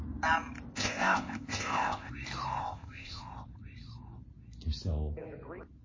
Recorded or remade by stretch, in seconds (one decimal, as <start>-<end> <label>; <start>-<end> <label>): 0.0-0.7 recorded; 0.7-2.1 remade; 2.1-2.6 recorded; 2.6-3.2 remade; 3.2-5.8 recorded